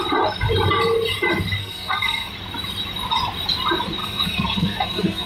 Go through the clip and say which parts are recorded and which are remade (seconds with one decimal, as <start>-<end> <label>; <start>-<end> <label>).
0.0-1.6 recorded; 1.6-2.3 remade; 2.3-4.0 recorded; 4.0-5.3 remade